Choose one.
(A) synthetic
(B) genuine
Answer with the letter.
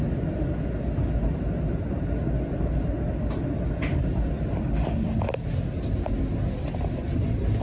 B